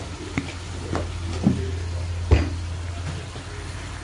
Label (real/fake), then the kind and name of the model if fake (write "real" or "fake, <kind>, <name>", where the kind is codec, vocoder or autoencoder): real